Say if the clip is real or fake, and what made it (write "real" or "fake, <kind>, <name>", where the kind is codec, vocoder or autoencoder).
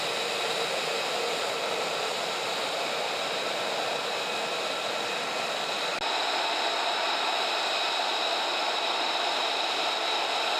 real